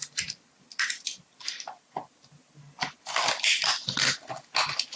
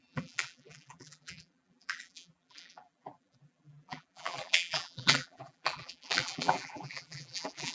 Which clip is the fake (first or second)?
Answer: second